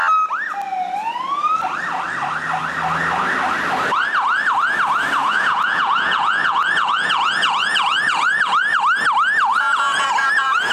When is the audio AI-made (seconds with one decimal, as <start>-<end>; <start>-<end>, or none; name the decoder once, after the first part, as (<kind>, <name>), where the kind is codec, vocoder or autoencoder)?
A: 5.2-8.8 (vocoder, Vocos); 9.5-10.7